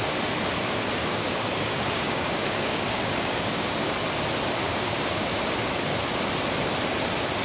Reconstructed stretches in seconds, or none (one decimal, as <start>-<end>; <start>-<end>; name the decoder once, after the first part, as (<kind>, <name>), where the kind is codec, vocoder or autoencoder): 1.1-3.9 (codec, DAC); 4.6-5.3